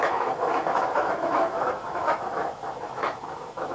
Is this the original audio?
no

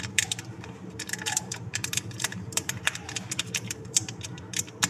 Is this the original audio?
no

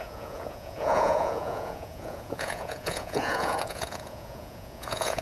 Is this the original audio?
no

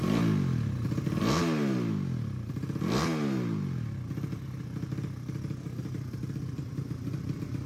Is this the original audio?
yes